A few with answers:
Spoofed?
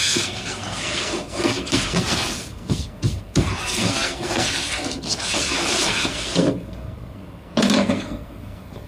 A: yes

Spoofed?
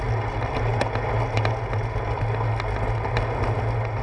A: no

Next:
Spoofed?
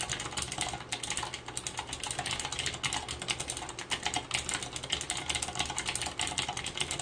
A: no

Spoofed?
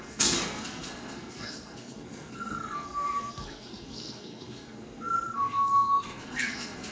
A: yes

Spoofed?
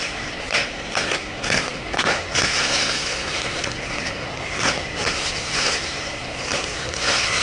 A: yes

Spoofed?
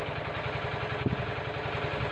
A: no